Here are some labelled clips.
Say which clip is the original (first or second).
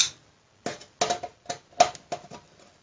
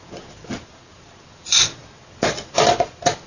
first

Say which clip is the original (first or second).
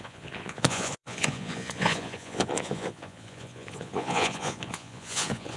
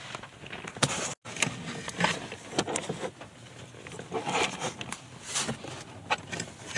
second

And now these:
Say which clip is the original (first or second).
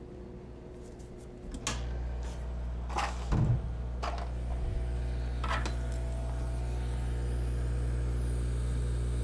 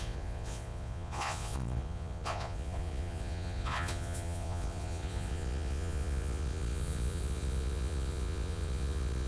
first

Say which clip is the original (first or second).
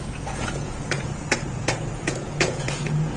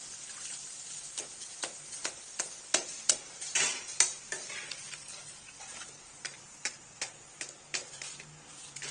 second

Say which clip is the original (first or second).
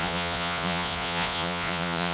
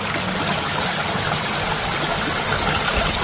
second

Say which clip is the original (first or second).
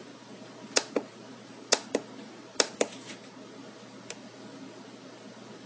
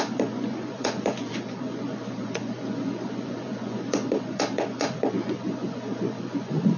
first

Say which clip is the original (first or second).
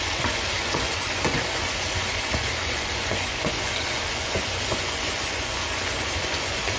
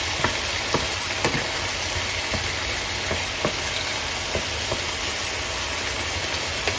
second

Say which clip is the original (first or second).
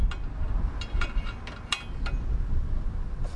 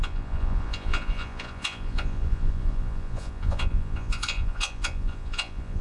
first